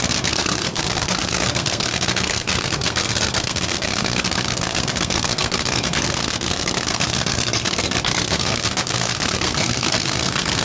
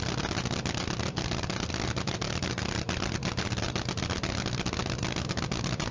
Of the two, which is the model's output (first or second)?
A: first